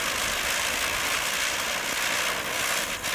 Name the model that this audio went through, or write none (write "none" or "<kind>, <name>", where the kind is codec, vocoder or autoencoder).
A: none